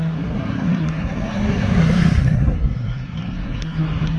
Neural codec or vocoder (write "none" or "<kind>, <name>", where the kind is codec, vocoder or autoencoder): codec, SNAC